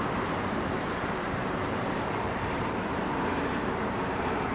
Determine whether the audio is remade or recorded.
remade